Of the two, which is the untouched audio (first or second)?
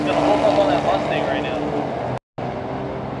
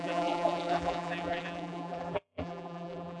first